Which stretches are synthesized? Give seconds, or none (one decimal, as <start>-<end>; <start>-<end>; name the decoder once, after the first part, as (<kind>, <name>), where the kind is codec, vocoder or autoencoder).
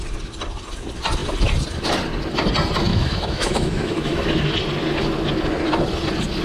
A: 2.9-4.3 (autoencoder, DAC-VAE)